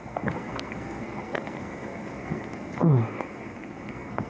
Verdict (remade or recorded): remade